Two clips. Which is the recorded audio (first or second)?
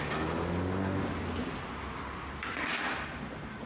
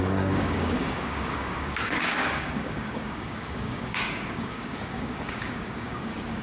first